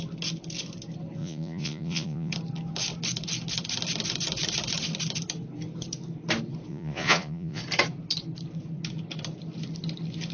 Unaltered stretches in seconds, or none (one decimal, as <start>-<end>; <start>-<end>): 0.0-1.2; 2.3-6.7; 7.6-10.3